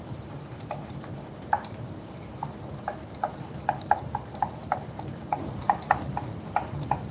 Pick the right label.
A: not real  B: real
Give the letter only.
A